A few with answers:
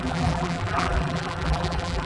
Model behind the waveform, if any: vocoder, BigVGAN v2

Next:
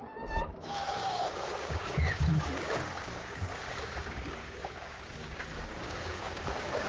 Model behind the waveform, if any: codec, DAC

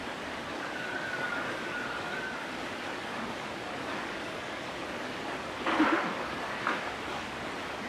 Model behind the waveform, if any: codec, DAC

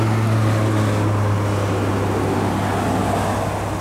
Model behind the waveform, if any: none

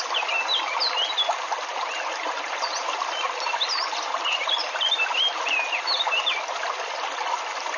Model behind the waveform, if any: none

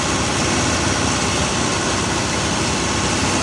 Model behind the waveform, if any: vocoder, BigVGAN v2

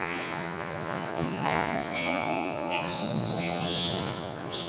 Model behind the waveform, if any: vocoder, Vocos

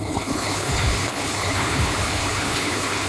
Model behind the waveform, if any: codec, HILCodec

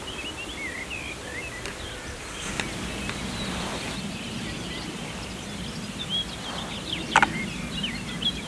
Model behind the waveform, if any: none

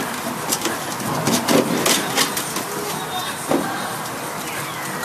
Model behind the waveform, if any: none